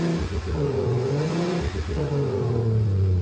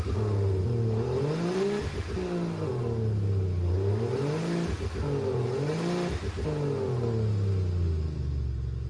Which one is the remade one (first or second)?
first